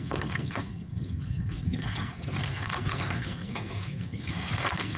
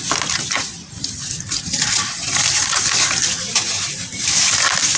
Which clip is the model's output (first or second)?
first